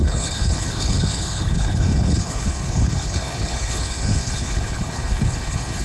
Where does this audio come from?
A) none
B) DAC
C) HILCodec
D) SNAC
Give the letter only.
C